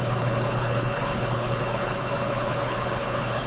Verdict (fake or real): fake